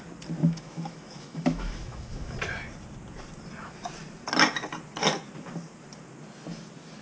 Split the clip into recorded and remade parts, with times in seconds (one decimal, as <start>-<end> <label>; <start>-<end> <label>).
0.0-0.4 recorded; 0.4-2.4 remade; 2.4-7.0 recorded